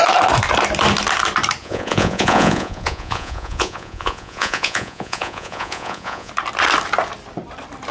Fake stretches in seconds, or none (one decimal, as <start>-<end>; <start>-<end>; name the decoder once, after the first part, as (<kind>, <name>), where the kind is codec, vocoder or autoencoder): 1.6-6.3 (vocoder, Vocos)